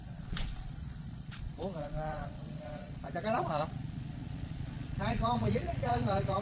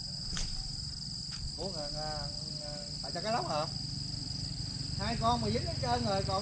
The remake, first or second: first